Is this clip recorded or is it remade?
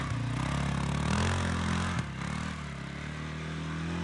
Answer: recorded